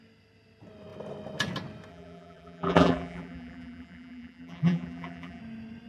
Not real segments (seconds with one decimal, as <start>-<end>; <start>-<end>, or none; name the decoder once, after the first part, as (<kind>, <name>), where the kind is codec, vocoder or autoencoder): 1.9-5.4 (vocoder, BigVGAN v2)